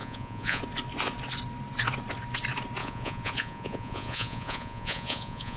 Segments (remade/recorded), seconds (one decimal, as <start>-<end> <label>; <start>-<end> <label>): 0.0-0.6 remade; 0.6-2.8 recorded; 2.8-5.6 remade